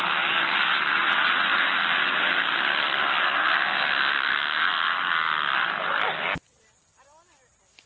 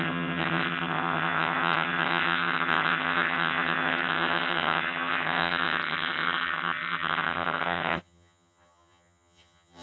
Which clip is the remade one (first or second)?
second